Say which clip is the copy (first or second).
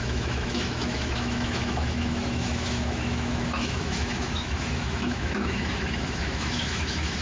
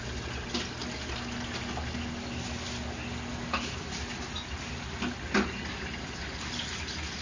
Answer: first